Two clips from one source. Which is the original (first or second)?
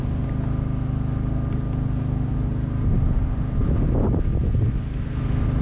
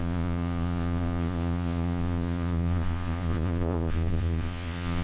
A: first